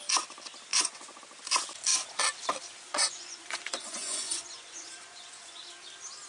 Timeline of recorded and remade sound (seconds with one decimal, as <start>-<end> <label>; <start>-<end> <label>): 0.0-0.7 recorded; 0.7-1.2 remade; 1.2-2.9 recorded; 2.9-5.6 remade; 5.6-6.3 recorded

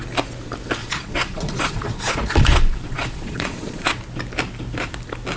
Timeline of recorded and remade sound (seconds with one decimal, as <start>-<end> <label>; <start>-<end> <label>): 0.0-0.8 recorded; 0.8-4.0 remade; 4.0-5.4 recorded

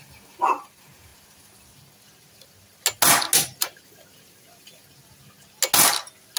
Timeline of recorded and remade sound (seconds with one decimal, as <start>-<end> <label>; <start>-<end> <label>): 0.0-1.1 remade; 1.1-3.6 recorded; 3.6-4.8 remade; 4.8-6.4 recorded

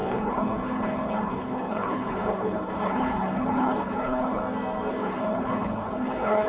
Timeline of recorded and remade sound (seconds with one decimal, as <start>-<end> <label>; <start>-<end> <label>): 0.0-4.4 remade; 4.4-4.9 recorded; 4.9-6.5 remade

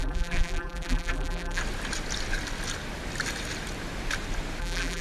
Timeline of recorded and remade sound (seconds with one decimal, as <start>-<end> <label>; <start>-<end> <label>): 0.0-1.6 remade; 1.6-4.6 recorded; 4.6-5.0 remade

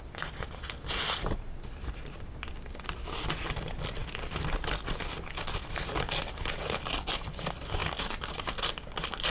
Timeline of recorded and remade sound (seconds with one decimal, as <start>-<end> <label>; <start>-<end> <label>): 0.0-9.3 recorded

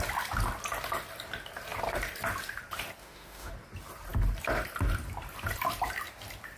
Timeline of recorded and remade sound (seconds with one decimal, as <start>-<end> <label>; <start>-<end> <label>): 0.0-3.0 recorded; 3.0-3.5 remade; 3.5-6.6 recorded